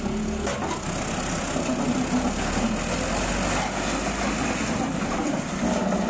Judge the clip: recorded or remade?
recorded